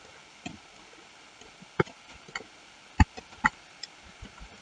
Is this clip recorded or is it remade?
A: recorded